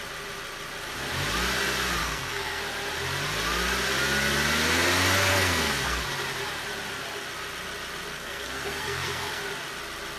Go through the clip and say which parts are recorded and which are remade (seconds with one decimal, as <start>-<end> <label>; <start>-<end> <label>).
0.0-2.0 recorded; 2.0-2.6 remade; 2.6-5.3 recorded; 5.3-6.0 remade; 6.0-8.1 recorded; 8.1-9.4 remade; 9.4-10.2 recorded